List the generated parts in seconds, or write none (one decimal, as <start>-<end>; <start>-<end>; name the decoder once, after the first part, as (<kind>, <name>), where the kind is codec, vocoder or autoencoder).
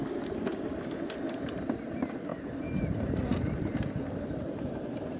0.0-5.2 (vocoder, BigVGAN v2)